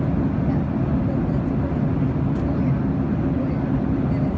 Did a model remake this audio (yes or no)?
no